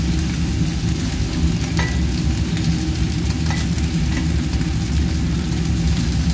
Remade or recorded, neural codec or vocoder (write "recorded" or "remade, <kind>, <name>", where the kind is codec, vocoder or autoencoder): recorded